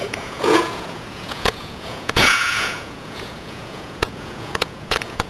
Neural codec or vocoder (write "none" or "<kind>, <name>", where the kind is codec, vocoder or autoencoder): vocoder, Vocos